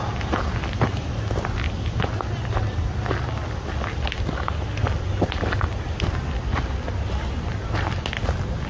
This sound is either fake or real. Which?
real